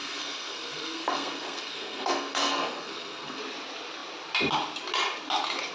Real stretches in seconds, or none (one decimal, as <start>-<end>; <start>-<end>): 3.4-5.7